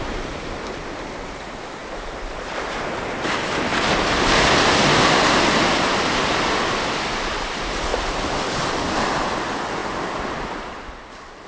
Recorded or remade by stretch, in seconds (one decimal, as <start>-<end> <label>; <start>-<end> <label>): 0.0-3.7 remade; 3.7-4.7 recorded; 4.7-7.9 remade; 7.9-8.7 recorded; 8.7-11.5 remade